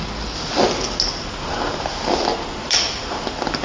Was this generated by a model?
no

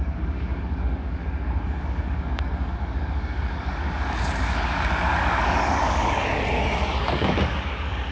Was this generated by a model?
yes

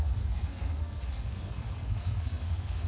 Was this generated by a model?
yes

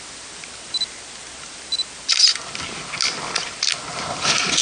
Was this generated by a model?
no